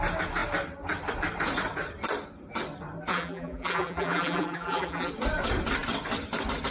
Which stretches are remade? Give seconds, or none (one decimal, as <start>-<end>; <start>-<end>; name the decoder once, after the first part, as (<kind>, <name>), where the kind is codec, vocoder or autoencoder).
3.1-5.1 (vocoder, BigVGAN v2)